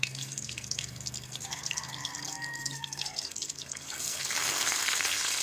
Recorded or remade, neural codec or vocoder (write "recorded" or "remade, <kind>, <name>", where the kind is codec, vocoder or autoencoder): remade, codec, SNAC